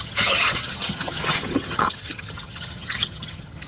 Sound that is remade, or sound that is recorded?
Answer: remade